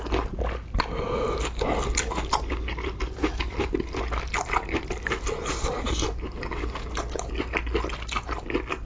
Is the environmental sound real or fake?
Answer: real